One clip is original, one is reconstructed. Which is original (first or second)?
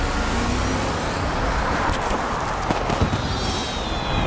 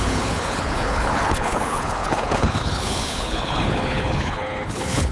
first